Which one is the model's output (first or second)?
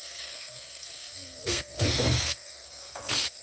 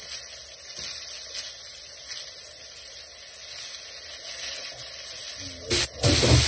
first